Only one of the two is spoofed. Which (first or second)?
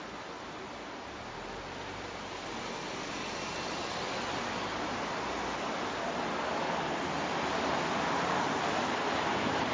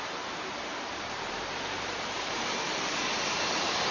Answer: second